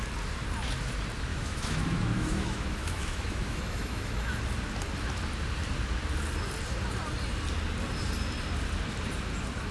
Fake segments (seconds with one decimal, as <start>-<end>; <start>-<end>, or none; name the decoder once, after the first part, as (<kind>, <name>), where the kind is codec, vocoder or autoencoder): 1.3-4.4 (autoencoder, DAC-VAE)